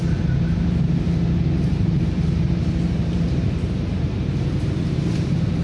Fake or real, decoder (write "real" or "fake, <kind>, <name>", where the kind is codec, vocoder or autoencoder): fake, vocoder, BigVGAN v2